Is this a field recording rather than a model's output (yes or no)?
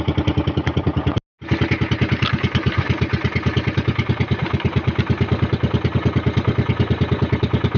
yes